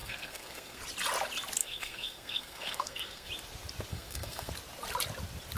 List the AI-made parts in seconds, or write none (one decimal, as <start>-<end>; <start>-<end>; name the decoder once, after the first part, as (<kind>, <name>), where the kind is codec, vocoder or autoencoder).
0.0-0.8 (codec, SNAC); 1.6-3.3; 3.9-4.5